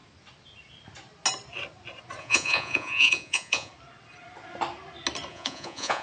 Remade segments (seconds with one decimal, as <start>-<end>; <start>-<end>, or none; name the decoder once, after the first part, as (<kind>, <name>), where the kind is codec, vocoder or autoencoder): 2.2-3.7 (vocoder, Vocos); 5.3-6.0